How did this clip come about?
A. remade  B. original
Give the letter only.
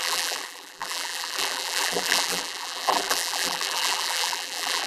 A